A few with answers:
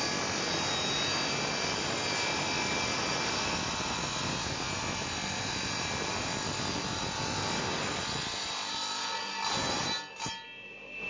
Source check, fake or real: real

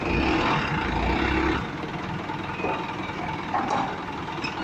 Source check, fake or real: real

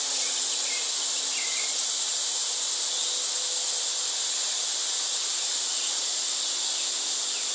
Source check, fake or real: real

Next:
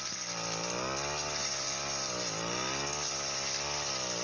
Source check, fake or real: real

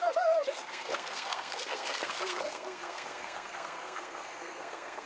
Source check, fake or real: fake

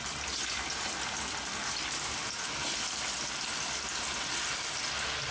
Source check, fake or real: real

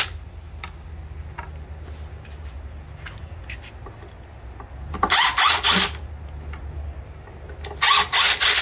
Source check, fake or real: real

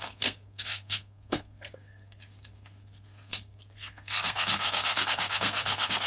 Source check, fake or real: fake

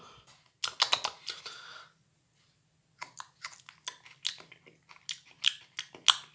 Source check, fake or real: real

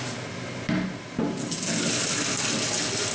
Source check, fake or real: real